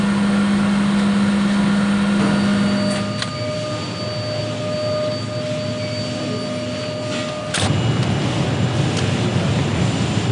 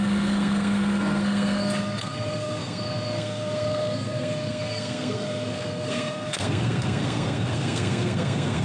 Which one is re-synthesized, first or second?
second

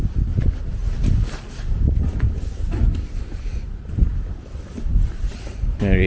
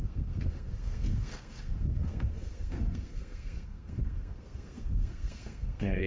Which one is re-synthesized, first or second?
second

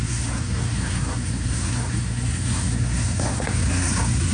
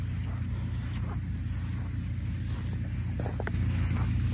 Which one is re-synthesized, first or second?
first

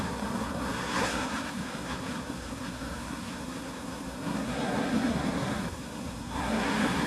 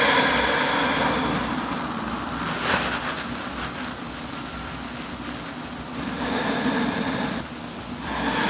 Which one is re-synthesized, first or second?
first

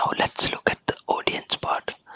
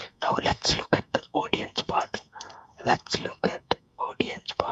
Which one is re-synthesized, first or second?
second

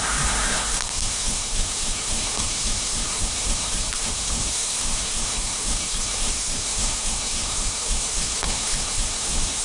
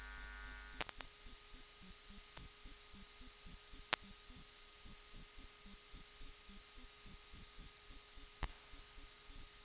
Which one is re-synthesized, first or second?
first